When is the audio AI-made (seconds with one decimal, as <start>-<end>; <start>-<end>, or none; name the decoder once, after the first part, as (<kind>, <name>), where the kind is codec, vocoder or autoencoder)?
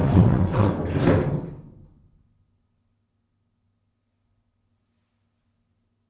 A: 0.0-0.7 (vocoder, WaveNeXt)